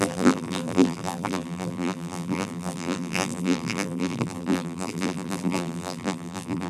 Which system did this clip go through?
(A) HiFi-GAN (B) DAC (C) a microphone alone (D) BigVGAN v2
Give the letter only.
D